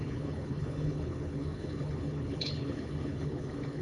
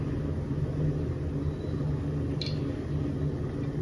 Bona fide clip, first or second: second